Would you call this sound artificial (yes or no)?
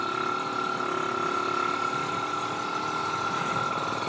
no